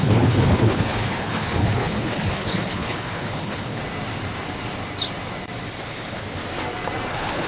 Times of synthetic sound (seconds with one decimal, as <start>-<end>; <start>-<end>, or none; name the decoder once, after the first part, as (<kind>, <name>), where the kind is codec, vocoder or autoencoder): 0.0-3.8 (codec, HILCodec); 5.8-6.4; 7.1-7.5